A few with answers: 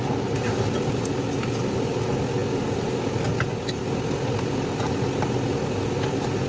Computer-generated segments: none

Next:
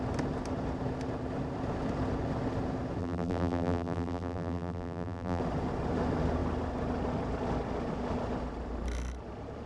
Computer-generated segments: 3.0-5.4 (vocoder, BigVGAN v2)

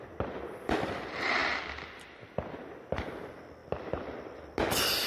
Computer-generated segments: 1.4-2.3 (vocoder, BigVGAN v2); 3.6-4.4

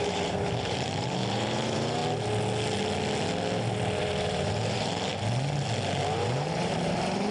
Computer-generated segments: 0.0-2.0 (vocoder, BigVGAN v2); 4.0-5.1; 6.3-7.3

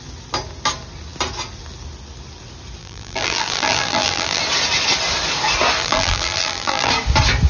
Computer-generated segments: 2.8-4.4 (vocoder, BigVGAN v2); 5.8-6.9

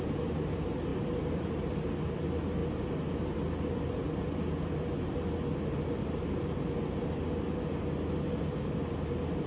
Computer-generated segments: none